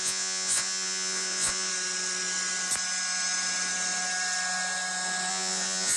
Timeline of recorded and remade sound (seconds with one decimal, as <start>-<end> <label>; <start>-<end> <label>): 0.0-1.7 remade; 1.7-5.3 recorded; 5.3-6.0 remade